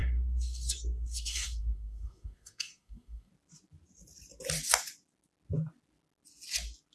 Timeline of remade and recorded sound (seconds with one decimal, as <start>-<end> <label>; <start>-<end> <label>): 0.0-3.3 remade; 3.3-6.9 recorded